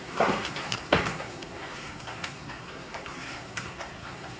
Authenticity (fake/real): fake